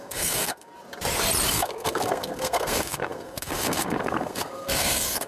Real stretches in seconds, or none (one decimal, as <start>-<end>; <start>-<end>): 0.7-1.5